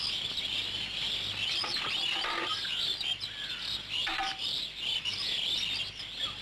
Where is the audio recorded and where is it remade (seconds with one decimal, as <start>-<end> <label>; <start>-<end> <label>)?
0.0-6.4 recorded